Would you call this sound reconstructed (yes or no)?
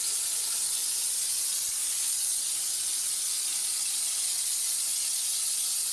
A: no